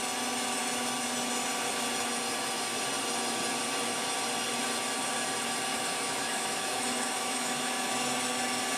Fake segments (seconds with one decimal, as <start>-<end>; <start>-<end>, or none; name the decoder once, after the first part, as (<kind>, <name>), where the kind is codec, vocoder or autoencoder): 5.7-7.9 (autoencoder, DAC-VAE)